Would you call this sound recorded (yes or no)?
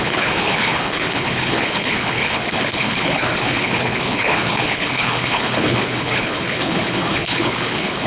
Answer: no